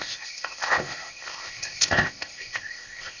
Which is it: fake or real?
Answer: fake